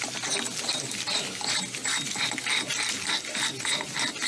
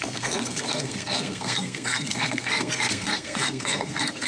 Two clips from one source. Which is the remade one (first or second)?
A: second